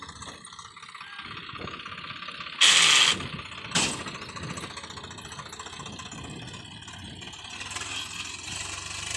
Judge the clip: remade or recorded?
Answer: recorded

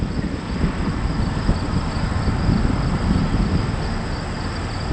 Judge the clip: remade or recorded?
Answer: recorded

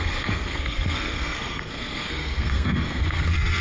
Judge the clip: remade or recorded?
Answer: remade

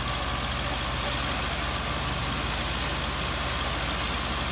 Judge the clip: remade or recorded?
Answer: recorded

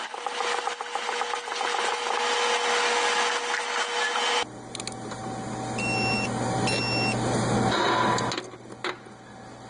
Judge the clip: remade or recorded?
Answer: recorded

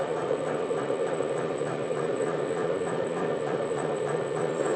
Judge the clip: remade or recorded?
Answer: remade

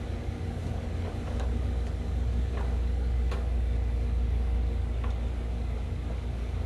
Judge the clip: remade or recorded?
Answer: remade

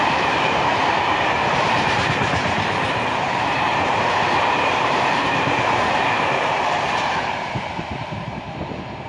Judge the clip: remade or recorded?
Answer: remade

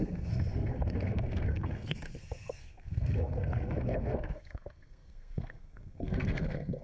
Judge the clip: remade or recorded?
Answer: remade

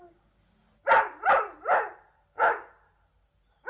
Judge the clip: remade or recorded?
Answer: recorded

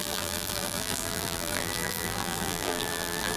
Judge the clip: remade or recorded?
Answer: remade